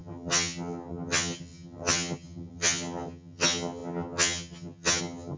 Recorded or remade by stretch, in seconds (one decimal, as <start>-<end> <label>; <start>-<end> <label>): 0.0-5.4 remade